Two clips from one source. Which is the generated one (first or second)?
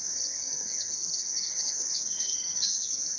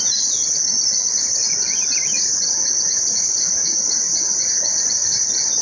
first